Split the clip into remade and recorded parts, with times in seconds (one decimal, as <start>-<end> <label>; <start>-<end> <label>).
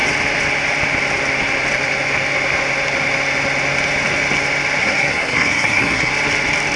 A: 0.0-4.8 recorded; 4.8-6.1 remade; 6.1-6.8 recorded